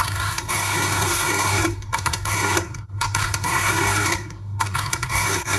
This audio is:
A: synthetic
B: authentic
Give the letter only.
A